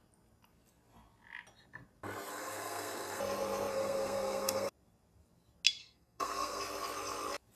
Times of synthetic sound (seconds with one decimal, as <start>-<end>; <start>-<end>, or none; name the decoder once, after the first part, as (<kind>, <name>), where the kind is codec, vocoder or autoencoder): 2.3-3.2 (codec, SNAC); 3.7-4.7; 5.8-6.6